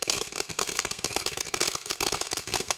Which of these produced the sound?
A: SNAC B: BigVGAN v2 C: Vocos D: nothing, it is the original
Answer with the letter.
A